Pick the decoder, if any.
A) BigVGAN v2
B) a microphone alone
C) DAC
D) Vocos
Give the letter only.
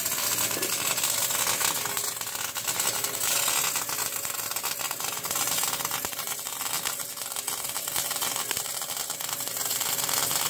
B